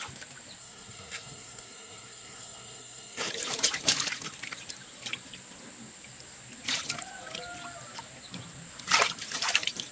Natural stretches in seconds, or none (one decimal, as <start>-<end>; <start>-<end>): 0.0-0.6; 3.3-9.9